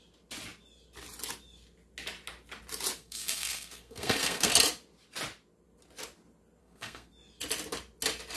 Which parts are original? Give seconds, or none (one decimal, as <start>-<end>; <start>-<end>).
0.0-3.0; 4.5-6.6; 7.1-8.4